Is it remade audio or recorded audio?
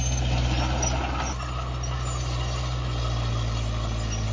recorded